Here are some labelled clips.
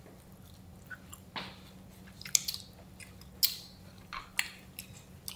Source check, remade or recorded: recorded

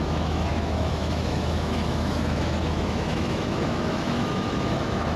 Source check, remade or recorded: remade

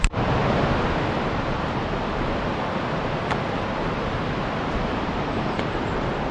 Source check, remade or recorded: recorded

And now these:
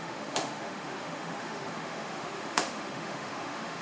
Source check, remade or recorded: remade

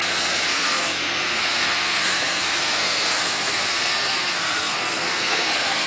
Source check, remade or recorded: remade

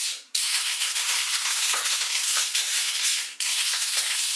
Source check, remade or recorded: remade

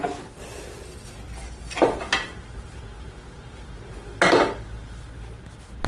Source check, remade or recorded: recorded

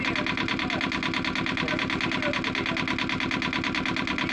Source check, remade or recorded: recorded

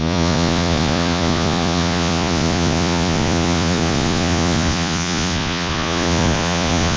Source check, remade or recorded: remade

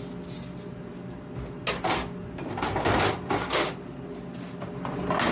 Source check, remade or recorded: recorded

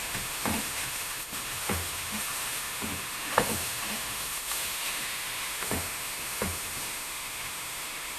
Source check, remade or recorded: remade